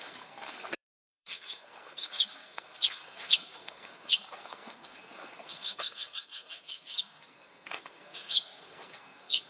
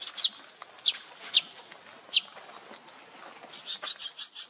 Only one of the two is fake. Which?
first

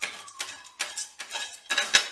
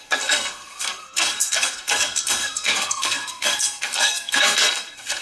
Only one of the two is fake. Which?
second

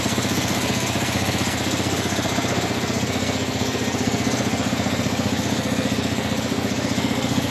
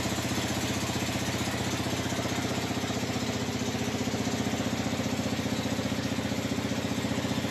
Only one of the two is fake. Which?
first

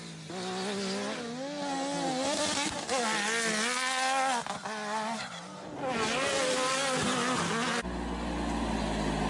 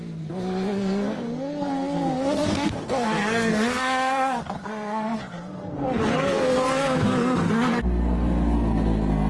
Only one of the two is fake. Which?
second